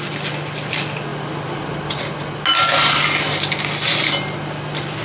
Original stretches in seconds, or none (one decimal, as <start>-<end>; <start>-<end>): 0.0-5.0